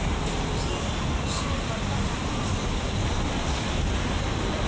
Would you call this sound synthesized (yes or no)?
no